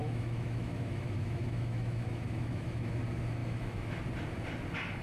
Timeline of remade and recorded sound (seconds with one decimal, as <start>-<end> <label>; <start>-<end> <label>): 0.0-3.0 remade; 3.0-3.4 recorded; 3.4-4.0 remade; 4.0-5.0 recorded